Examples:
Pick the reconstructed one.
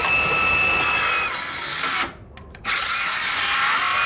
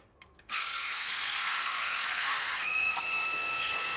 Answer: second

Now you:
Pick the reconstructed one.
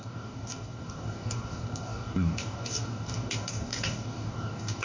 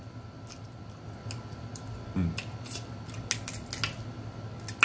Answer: first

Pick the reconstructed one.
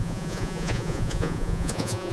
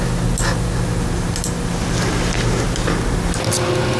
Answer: first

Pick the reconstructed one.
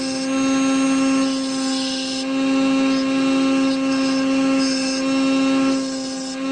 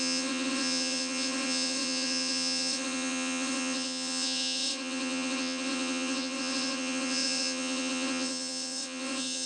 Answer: second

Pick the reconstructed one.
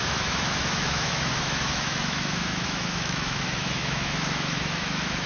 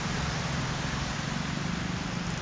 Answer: first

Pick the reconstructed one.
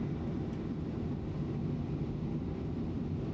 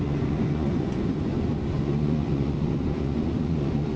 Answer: second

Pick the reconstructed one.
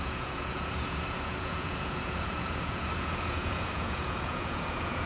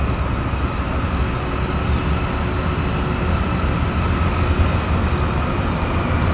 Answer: first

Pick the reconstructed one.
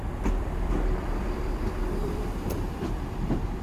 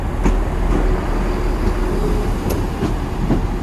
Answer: first